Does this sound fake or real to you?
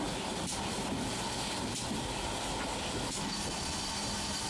real